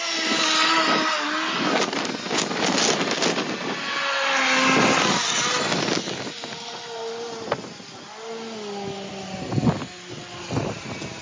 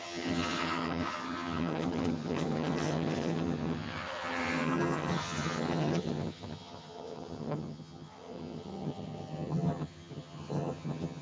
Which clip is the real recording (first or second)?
first